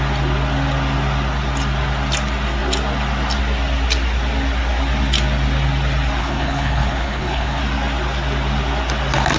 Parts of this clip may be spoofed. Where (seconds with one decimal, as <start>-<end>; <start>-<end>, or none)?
6.2-7.6